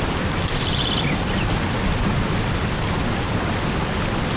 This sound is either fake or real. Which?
real